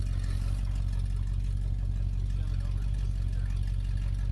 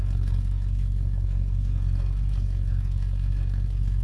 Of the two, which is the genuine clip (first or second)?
first